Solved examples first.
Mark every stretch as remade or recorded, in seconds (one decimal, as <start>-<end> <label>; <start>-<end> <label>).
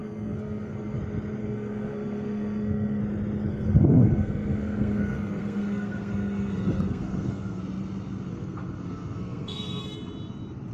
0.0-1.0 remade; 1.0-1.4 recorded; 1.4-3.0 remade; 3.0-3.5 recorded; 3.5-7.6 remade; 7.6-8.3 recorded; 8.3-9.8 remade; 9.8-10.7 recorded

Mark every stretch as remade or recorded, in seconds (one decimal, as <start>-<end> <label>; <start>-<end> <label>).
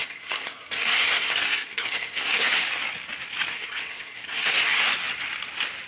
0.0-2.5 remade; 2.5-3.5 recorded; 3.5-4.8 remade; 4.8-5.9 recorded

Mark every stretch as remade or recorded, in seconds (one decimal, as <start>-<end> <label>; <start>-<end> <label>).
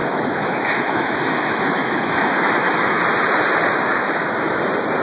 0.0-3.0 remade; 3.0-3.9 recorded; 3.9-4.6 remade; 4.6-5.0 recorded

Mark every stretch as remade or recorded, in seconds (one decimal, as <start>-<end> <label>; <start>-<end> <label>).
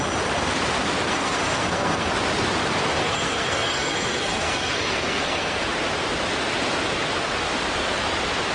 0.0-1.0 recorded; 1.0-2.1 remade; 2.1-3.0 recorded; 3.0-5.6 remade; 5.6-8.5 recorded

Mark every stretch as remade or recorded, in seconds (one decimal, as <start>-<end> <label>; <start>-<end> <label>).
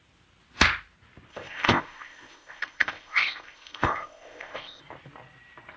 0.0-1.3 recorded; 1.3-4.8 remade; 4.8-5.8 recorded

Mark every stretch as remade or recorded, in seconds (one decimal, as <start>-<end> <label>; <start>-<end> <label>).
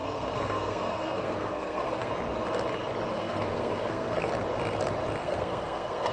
0.0-2.1 remade; 2.1-3.1 recorded; 3.1-4.3 remade; 4.3-5.2 recorded; 5.2-6.1 remade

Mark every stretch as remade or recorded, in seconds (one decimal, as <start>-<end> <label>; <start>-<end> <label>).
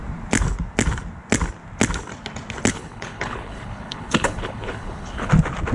0.0-2.7 recorded; 2.7-5.3 remade; 5.3-5.7 recorded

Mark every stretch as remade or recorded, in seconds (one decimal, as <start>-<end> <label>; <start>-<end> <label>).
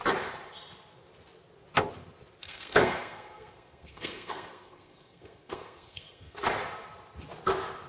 0.0-2.4 recorded; 2.4-6.4 remade; 6.4-7.9 recorded